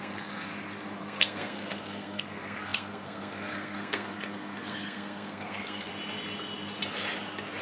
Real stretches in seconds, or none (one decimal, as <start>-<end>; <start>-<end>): 0.5-1.0; 5.9-7.6

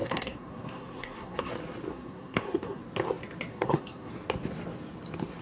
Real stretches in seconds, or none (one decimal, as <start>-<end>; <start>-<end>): 1.5-1.9; 2.8-3.5; 4.1-5.4

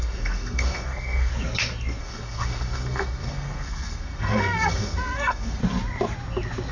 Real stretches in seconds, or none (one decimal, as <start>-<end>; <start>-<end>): 1.3-2.0; 5.6-6.7

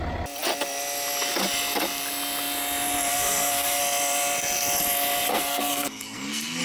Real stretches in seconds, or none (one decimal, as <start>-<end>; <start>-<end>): 0.0-3.1; 3.8-5.3

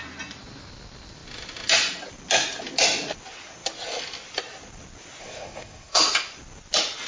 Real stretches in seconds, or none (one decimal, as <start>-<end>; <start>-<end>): 0.0-5.2; 6.0-7.1

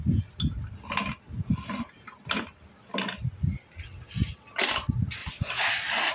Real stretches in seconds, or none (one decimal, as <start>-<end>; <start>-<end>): 0.0-6.1